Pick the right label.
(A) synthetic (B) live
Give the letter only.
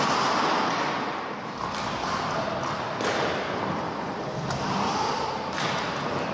B